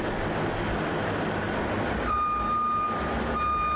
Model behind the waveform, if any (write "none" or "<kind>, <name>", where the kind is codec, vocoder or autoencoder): none